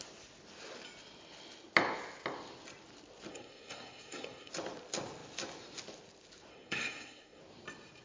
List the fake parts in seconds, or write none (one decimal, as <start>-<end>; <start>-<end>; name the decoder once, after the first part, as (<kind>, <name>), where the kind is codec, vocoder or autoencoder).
3.3-4.5 (codec, SNAC); 6.5-7.4

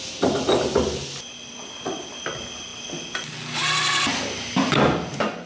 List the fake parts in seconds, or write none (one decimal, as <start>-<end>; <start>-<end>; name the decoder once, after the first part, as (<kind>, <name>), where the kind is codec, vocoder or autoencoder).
none

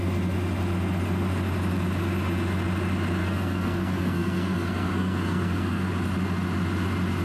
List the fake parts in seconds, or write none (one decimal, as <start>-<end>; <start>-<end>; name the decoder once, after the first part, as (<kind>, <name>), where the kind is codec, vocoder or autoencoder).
3.2-5.9 (codec, SNAC)